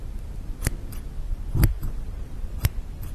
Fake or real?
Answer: fake